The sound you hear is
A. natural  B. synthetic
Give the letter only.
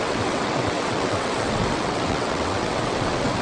B